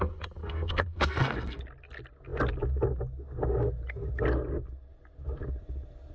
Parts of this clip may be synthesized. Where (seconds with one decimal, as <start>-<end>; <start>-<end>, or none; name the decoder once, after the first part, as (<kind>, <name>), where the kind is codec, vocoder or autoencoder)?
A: 0.4-1.6 (codec, SNAC)